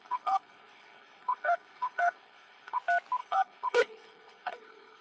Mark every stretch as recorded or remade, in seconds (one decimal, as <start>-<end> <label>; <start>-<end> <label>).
0.0-2.8 remade; 2.8-3.2 recorded; 3.2-5.0 remade